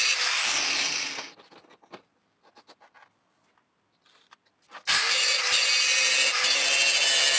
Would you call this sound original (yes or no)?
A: yes